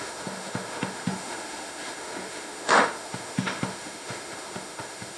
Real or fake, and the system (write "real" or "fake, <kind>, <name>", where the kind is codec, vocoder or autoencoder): fake, autoencoder, DAC-VAE